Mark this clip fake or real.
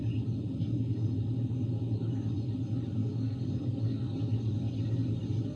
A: real